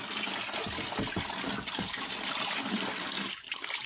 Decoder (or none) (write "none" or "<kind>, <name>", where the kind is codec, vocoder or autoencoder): none